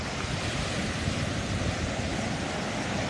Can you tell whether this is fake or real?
real